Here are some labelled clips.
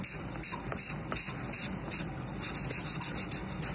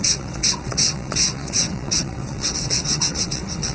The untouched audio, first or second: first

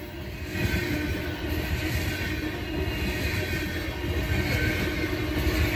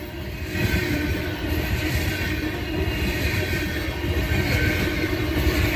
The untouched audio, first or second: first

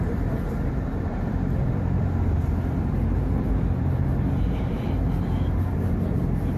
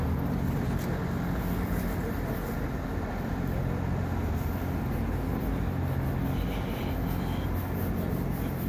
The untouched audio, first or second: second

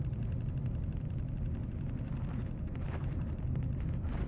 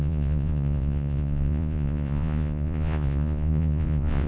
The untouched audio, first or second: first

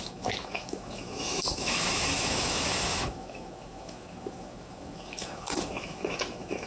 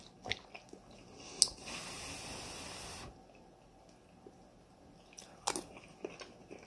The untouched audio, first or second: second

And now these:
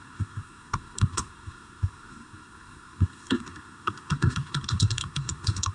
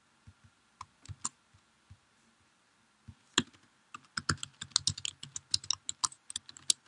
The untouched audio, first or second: second